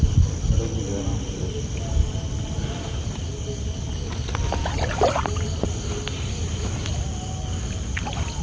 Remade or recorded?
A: recorded